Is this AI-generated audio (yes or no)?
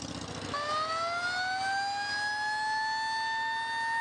no